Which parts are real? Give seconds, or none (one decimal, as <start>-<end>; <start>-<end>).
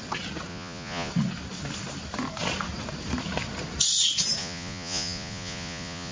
0.0-0.5; 1.1-4.4